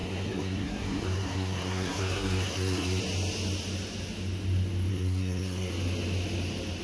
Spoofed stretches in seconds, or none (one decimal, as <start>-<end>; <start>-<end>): 0.0-3.0; 4.9-5.7